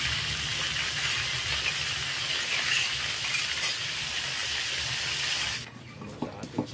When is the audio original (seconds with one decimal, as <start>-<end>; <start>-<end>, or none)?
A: 0.0-6.7